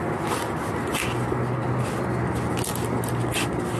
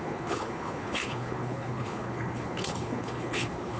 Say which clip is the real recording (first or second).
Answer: first